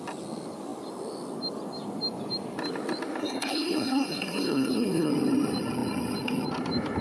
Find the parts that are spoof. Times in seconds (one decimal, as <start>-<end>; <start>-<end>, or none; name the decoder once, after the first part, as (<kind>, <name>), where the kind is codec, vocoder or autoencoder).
3.2-5.1 (codec, SNAC)